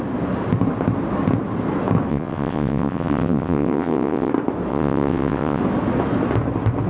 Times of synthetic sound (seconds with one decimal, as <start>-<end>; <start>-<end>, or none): 2.1-4.3; 4.7-5.6